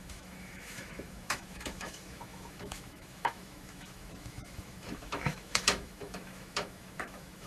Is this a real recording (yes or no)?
no